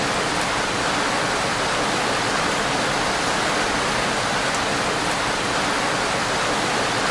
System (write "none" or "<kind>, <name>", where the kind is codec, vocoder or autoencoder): none